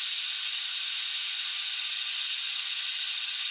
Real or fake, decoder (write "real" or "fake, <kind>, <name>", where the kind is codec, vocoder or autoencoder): real